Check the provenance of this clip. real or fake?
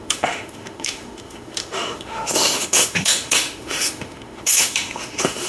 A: fake